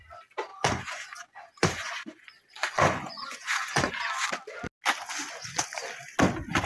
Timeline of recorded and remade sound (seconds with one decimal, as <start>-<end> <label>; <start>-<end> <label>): 0.0-0.5 recorded; 0.5-3.9 remade; 3.9-6.7 recorded